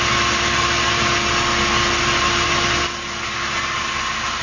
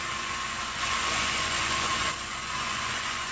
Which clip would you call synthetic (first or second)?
second